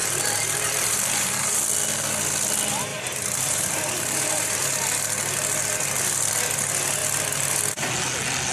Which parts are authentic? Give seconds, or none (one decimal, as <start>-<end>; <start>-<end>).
1.6-2.9; 4.6-8.5